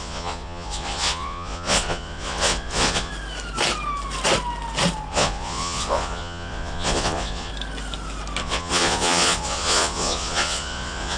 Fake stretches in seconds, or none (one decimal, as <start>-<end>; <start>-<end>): 0.0-3.1; 5.1-7.5; 8.4-11.2